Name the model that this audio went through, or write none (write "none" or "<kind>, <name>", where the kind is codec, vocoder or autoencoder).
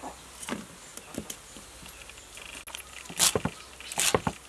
none